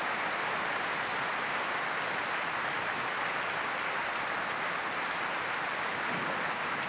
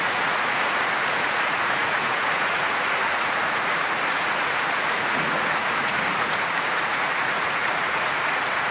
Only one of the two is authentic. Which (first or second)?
first